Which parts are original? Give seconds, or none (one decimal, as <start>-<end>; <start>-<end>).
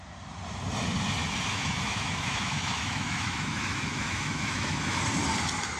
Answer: 0.0-1.5; 5.0-5.8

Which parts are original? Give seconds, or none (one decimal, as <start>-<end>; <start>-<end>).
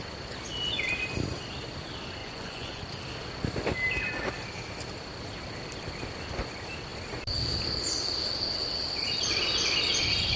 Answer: 0.0-2.2; 2.8-10.4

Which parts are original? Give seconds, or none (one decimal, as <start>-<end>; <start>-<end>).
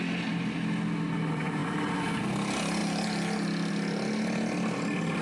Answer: 0.0-5.2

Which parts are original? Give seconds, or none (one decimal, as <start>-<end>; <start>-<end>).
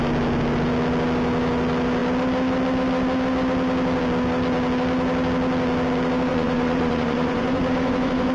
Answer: 0.0-6.3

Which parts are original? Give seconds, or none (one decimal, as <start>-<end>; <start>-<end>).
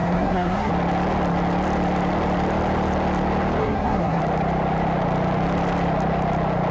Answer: 0.7-3.6; 4.2-6.7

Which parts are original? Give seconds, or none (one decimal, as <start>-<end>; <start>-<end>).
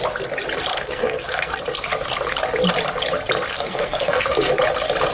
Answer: 0.0-0.7; 1.5-3.5; 4.5-5.1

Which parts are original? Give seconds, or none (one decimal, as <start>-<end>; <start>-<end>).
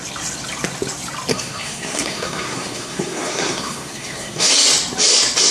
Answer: 0.0-1.3; 4.5-5.5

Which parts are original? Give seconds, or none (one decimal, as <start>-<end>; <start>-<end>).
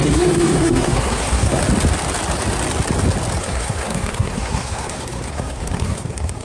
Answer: 1.6-3.4